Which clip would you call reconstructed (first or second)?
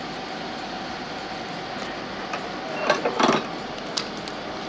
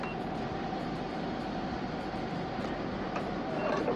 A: second